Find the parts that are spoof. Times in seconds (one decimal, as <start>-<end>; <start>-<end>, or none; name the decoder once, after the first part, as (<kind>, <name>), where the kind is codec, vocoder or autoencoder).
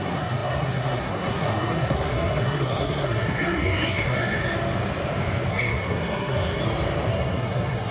0.0-4.4 (codec, SNAC); 5.5-6.6; 7.1-7.9